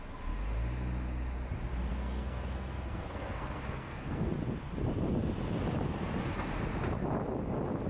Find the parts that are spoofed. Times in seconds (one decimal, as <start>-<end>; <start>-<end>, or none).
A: 1.9-4.3